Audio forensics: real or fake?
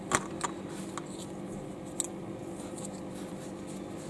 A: real